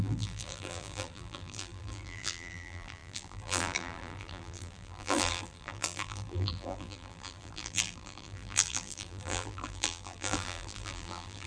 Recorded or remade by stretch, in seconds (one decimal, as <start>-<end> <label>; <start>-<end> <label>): 0.0-11.5 remade